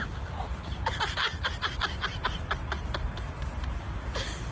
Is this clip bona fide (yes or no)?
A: yes